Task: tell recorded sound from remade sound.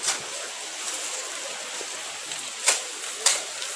recorded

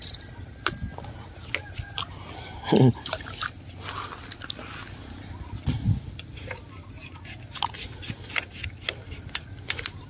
recorded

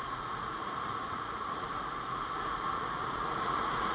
remade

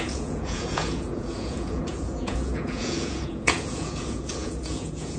remade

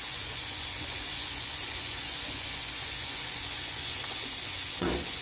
remade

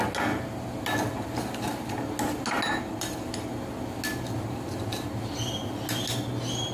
recorded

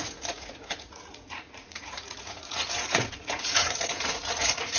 remade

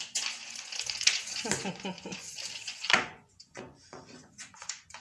remade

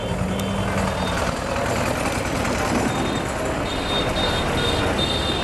recorded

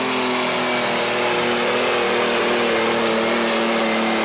recorded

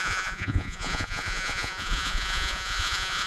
remade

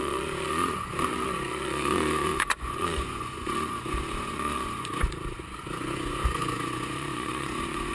remade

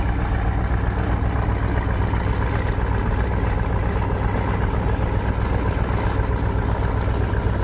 recorded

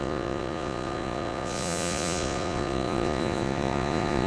remade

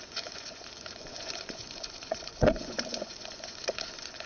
remade